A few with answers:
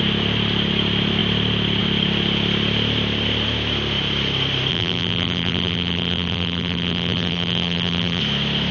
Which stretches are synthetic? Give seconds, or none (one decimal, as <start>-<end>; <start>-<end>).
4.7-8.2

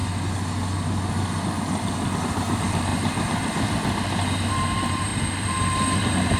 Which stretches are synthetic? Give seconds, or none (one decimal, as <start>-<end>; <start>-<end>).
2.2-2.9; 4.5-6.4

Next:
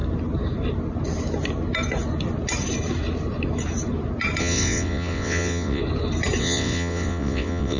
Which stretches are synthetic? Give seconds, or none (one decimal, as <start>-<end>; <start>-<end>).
4.4-5.8; 6.4-7.8

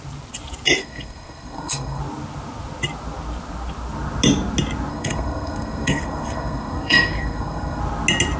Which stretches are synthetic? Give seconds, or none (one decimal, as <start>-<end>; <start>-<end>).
0.8-2.0; 4.9-7.8